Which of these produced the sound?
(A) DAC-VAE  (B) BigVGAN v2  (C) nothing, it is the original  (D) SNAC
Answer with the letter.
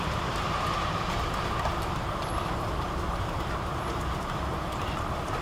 B